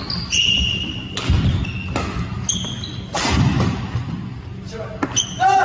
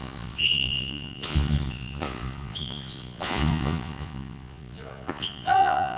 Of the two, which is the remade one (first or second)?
second